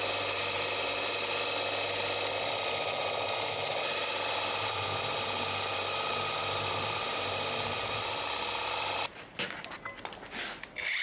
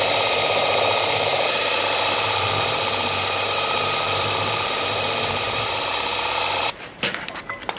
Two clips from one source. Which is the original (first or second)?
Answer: first